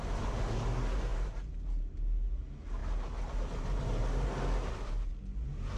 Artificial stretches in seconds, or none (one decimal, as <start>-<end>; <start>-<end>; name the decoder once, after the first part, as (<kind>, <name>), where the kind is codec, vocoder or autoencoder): none